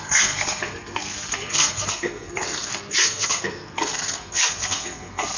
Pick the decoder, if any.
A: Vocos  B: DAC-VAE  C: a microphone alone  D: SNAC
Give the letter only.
D